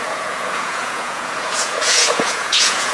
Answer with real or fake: fake